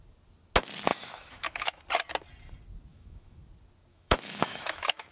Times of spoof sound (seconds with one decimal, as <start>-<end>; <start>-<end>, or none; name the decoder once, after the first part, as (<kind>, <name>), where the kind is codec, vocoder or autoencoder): 0.9-1.8 (autoencoder, DAC-VAE); 2.9-3.4; 3.9-5.1